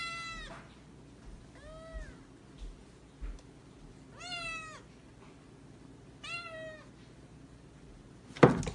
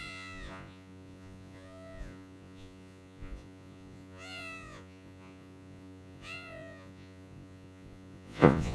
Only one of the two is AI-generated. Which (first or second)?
second